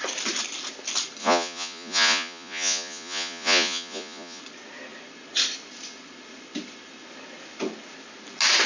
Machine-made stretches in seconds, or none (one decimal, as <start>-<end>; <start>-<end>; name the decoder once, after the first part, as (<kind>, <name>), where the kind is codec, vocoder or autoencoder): 1.2-4.4 (vocoder, Vocos)